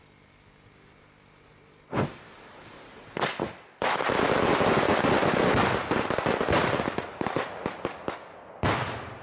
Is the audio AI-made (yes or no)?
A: no